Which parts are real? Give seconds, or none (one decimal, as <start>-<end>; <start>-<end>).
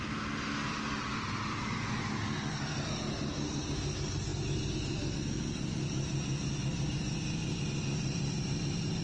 0.0-9.0